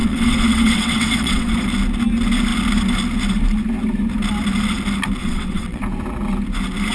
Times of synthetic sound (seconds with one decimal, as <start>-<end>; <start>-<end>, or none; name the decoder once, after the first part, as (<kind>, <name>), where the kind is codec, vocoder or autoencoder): 0.0-1.6 (vocoder, WaveNeXt); 5.2-5.8